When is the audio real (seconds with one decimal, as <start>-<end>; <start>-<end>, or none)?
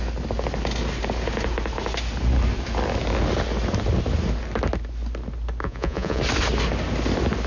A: 0.0-5.6; 6.2-7.5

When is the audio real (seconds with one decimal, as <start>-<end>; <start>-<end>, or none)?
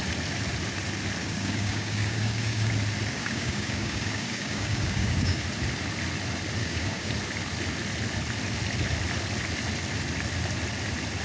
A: 0.0-1.2; 2.7-3.2; 5.4-6.6; 7.1-11.2